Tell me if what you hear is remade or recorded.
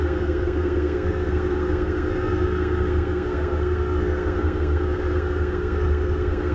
remade